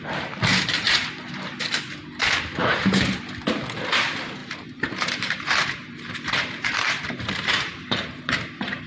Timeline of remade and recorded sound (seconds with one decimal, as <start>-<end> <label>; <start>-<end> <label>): 0.0-0.5 recorded; 0.5-1.6 remade; 1.6-2.6 recorded; 2.6-3.2 remade; 3.2-4.4 recorded; 4.4-8.9 remade